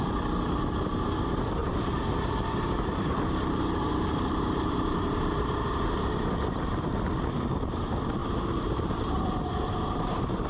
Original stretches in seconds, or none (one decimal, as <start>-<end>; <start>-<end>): 0.0-1.6; 5.9-8.2